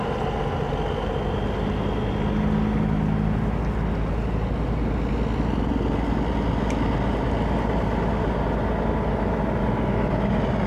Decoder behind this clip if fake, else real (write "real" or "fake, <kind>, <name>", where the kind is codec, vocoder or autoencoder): real